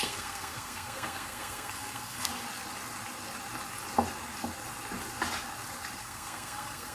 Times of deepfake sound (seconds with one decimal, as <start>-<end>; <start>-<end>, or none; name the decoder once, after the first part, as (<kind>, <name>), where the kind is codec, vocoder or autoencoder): 0.0-2.3 (codec, SNAC); 6.0-6.9